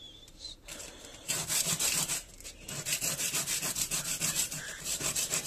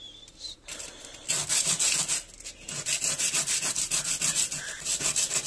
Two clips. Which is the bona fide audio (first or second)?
second